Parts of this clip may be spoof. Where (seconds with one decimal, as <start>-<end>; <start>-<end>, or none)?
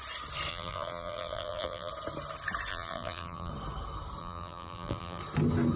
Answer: 0.5-1.9; 2.7-3.5; 4.2-5.2